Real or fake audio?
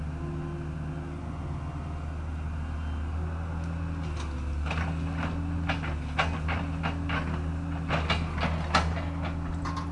real